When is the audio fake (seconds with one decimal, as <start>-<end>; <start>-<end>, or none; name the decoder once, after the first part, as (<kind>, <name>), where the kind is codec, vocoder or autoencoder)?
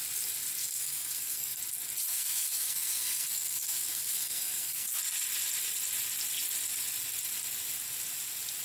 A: 0.6-1.6 (codec, SNAC); 2.1-5.0